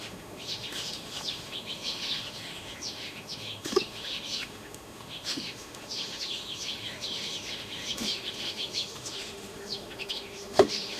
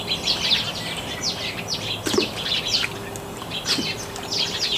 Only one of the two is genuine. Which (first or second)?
second